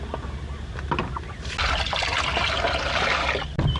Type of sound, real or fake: real